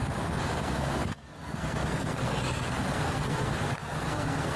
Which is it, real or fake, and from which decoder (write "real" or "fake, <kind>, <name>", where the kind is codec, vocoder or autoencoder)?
fake, codec, SNAC